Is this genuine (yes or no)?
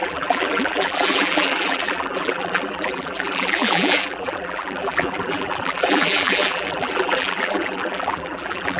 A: no